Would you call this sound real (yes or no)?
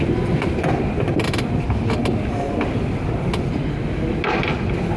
yes